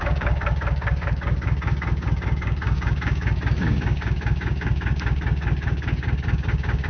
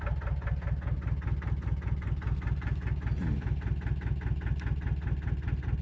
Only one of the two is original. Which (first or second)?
second